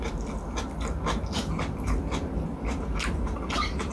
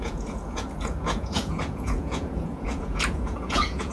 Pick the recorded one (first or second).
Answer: first